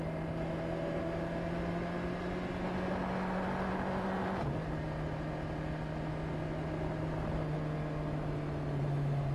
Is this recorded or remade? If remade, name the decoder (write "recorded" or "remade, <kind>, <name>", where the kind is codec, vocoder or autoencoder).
recorded